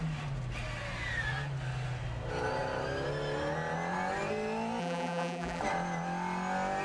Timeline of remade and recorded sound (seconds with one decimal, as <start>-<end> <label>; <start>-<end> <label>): 0.0-4.8 recorded; 4.8-5.6 remade; 5.6-6.8 recorded